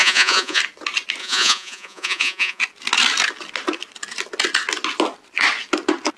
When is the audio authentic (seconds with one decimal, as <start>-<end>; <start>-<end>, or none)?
0.6-1.2; 2.6-6.2